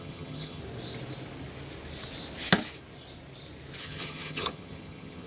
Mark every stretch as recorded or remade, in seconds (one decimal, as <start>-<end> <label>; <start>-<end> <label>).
0.0-0.6 remade; 0.6-3.8 recorded; 3.8-5.3 remade